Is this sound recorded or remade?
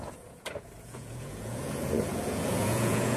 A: remade